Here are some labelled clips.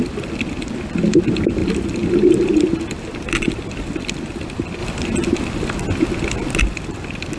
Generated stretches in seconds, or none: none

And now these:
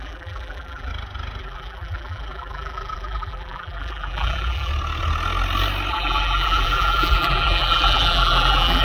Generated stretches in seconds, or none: 0.0-0.9 (vocoder, BigVGAN v2); 1.4-4.7; 5.9-8.8